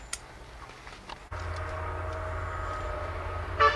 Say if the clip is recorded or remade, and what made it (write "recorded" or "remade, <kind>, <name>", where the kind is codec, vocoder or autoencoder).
recorded